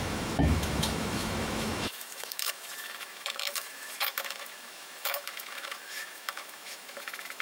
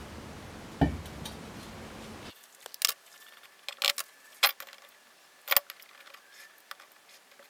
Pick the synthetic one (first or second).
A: first